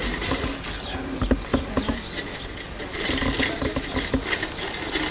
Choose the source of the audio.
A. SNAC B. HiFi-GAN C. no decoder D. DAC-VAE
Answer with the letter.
C